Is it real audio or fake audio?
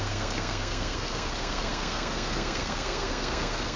fake